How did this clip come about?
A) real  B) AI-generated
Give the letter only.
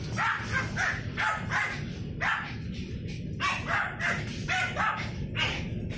A